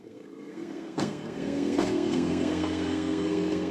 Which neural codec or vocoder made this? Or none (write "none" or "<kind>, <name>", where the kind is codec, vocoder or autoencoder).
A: codec, SNAC